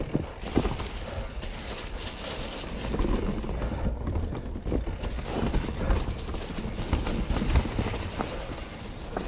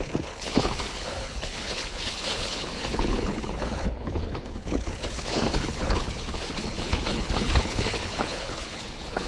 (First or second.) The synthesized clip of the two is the second